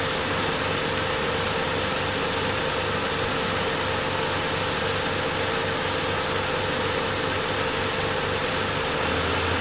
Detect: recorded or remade recorded